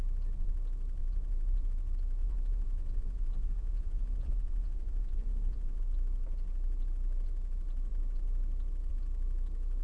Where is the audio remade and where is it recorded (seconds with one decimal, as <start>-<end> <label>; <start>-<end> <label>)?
0.0-1.0 recorded; 1.0-1.7 remade; 1.7-2.2 recorded; 2.2-5.8 remade; 5.8-9.8 recorded